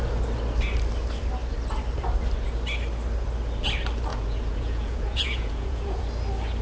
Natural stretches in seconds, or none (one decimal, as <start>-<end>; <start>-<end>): 0.0-4.1; 6.0-6.6